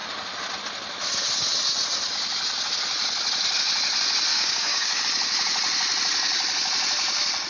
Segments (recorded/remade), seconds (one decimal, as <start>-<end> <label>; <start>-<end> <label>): 0.0-4.3 recorded; 4.3-5.0 remade; 5.0-7.5 recorded